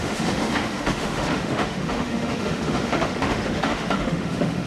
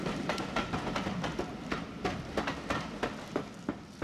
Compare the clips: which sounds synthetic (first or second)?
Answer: first